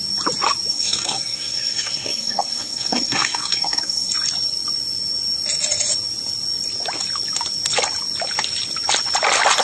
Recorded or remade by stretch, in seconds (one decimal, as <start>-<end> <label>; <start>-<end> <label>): 0.0-0.7 recorded; 0.7-4.1 remade; 4.1-9.6 recorded